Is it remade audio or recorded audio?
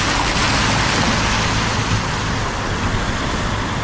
recorded